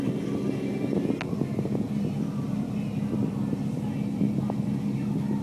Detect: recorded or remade recorded